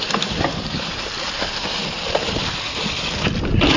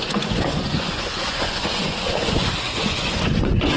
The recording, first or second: first